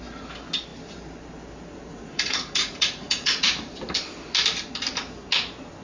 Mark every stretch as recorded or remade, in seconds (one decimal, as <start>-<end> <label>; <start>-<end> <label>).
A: 0.0-1.9 recorded; 1.9-3.5 remade; 3.5-5.8 recorded